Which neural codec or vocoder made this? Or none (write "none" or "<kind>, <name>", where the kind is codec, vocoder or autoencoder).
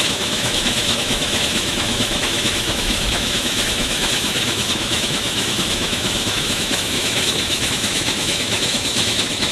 autoencoder, DAC-VAE